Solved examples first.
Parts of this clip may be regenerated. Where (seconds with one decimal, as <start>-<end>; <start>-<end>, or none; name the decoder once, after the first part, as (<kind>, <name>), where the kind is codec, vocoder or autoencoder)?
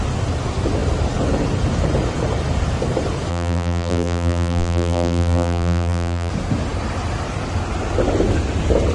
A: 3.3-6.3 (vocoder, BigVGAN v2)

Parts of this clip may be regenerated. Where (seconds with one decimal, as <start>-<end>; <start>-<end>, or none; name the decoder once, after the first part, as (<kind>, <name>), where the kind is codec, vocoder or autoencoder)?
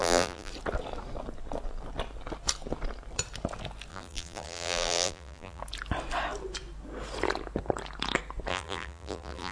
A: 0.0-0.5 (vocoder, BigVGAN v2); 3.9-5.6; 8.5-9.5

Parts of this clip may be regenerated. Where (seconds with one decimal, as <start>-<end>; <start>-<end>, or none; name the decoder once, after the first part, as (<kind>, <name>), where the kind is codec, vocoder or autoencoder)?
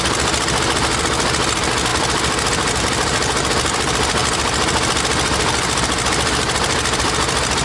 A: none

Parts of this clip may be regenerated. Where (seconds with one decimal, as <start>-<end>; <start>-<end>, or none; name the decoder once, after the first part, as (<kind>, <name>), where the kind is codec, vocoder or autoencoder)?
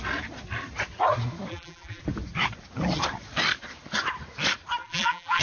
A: 1.5-2.0 (vocoder, BigVGAN v2); 4.8-5.4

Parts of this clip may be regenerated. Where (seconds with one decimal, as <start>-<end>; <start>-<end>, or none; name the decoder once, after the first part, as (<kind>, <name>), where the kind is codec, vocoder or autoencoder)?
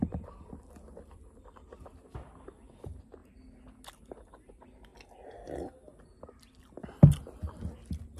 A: none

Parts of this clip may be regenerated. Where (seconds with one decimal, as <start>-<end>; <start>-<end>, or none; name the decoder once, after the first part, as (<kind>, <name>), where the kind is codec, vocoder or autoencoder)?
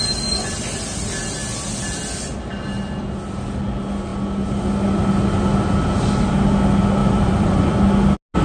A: 7.0-7.7 (vocoder, BigVGAN v2)